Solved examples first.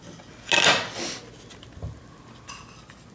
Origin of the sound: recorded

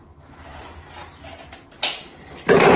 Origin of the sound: recorded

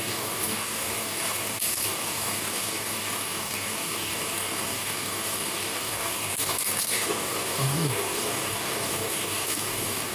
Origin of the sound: remade